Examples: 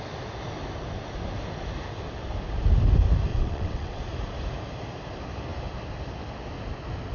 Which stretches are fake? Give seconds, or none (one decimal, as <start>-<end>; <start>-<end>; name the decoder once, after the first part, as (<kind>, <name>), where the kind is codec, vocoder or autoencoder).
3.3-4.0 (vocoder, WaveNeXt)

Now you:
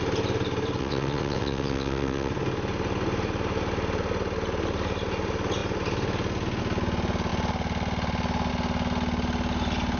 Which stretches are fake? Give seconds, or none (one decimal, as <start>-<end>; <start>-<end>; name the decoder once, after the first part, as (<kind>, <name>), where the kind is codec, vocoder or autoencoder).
0.8-2.3 (vocoder, WaveNeXt)

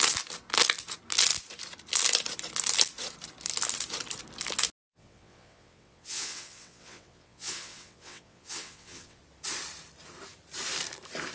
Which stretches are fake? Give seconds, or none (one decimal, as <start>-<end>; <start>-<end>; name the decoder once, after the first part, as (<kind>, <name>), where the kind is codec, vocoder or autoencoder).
4.9-9.2 (vocoder, WaveNeXt)